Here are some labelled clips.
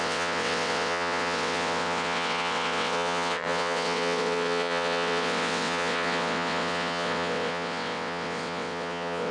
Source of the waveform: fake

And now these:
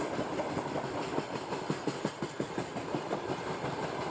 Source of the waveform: real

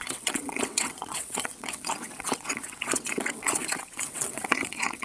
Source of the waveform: fake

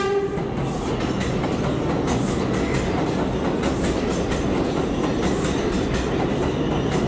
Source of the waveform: real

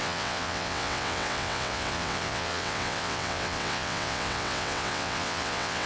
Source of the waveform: fake